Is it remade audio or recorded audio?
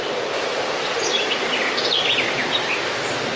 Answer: recorded